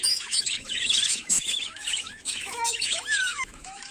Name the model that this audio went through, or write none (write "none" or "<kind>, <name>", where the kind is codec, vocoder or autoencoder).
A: autoencoder, DAC-VAE